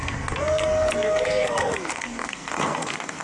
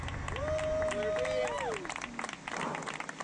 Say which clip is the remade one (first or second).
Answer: first